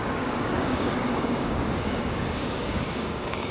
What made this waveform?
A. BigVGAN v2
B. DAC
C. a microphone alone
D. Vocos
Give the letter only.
B